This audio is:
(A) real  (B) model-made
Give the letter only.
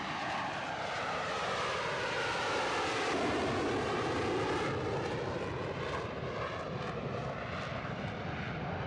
B